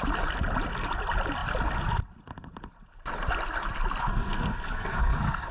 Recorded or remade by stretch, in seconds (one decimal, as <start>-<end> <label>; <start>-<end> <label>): 0.0-4.0 recorded; 4.0-5.5 remade